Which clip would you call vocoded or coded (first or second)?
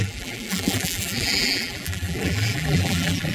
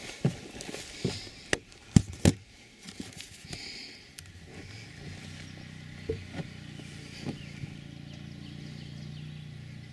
first